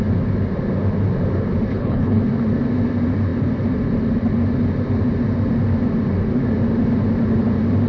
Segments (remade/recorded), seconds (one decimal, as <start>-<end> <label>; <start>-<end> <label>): 0.0-1.7 recorded; 1.7-2.2 remade; 2.2-7.9 recorded